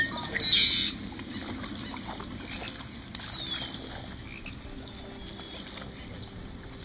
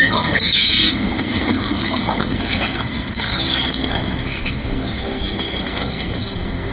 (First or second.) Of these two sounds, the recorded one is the first